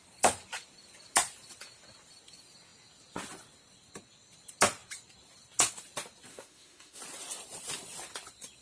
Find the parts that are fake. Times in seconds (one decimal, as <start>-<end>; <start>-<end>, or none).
6.3-7.0